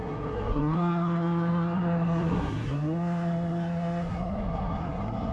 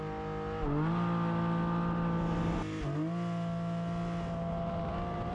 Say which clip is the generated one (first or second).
first